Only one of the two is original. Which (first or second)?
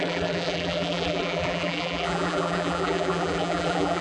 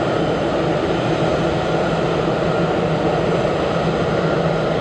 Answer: second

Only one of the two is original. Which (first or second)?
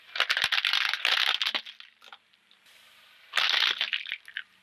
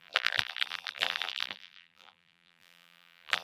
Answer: first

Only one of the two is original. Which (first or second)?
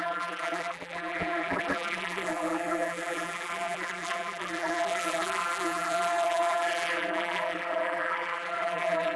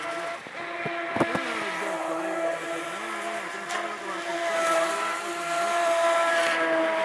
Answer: second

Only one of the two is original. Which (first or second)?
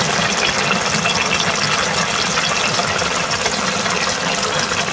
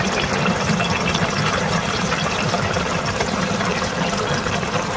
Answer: first